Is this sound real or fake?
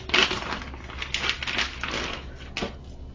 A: real